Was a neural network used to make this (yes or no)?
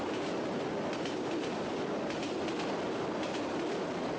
no